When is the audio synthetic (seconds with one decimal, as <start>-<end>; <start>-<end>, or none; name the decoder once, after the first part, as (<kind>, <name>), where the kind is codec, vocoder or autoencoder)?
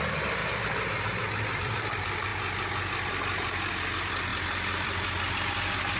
0.0-0.4 (vocoder, BigVGAN v2); 1.6-2.3; 3.7-6.0